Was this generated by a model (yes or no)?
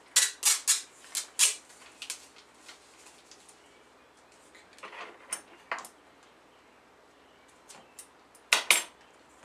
no